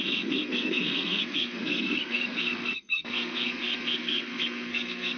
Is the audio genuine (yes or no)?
no